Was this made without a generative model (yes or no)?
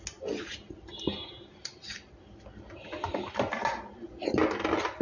yes